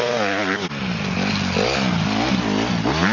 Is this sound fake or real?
real